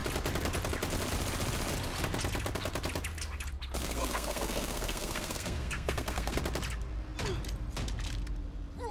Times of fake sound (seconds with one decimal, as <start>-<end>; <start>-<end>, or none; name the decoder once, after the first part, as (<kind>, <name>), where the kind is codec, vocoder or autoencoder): 3.8-6.4 (codec, SNAC)